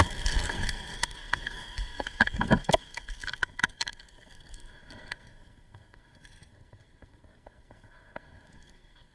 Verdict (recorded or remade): remade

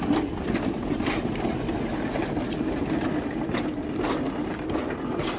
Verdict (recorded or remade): recorded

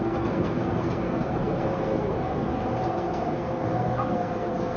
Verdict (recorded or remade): remade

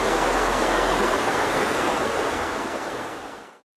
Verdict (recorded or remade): remade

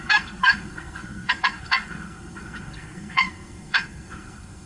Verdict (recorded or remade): remade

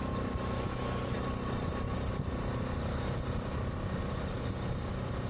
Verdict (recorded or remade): recorded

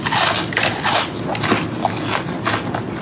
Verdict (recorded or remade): recorded